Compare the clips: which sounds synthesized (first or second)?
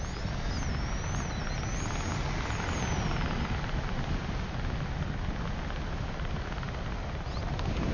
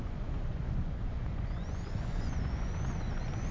second